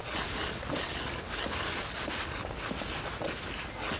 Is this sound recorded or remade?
recorded